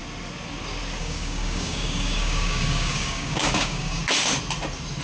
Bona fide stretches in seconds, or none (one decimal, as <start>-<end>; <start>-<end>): 0.0-1.0; 4.0-5.0